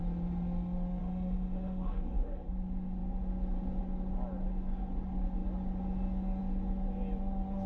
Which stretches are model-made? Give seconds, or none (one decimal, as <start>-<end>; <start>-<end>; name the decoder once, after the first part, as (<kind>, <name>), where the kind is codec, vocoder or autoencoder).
1.0-2.5 (autoencoder, DAC-VAE)